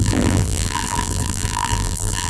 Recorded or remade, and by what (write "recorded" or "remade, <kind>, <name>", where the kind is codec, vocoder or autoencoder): remade, vocoder, BigVGAN v2